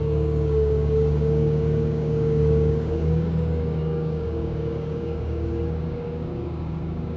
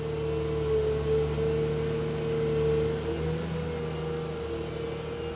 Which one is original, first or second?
second